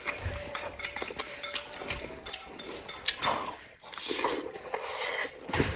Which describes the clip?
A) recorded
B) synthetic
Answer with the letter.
A